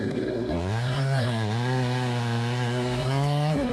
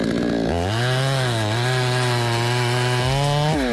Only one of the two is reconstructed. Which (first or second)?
first